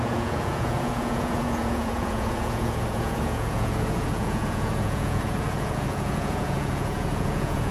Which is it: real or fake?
fake